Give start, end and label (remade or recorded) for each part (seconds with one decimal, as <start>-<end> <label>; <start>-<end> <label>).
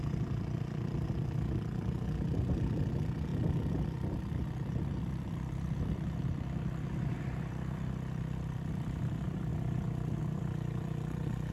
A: 0.0-3.3 remade; 3.3-4.8 recorded; 4.8-9.5 remade; 9.5-10.2 recorded; 10.2-11.5 remade